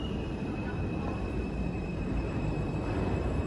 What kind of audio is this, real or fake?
fake